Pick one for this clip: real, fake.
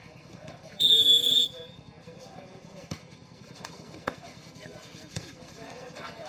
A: fake